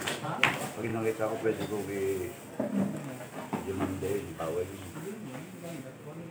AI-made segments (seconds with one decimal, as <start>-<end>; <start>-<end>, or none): 0.0-0.9; 4.4-5.1; 5.6-6.3